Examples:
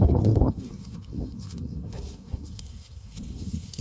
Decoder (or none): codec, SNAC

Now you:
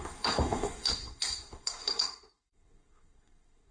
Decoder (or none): codec, SNAC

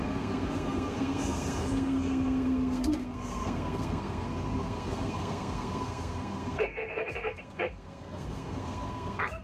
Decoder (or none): codec, SNAC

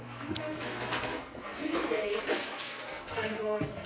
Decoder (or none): codec, SNAC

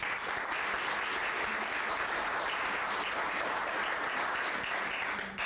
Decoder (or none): none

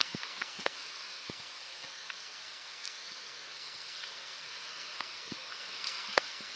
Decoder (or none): codec, SNAC